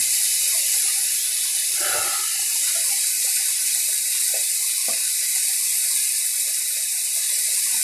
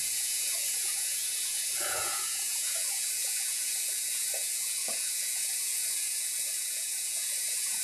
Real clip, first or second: first